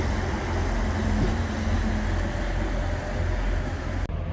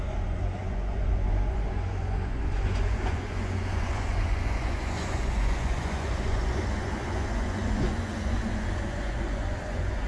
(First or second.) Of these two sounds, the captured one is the first